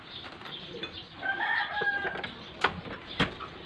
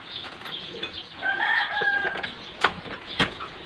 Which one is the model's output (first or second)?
second